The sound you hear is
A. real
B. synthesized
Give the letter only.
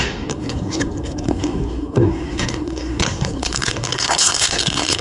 B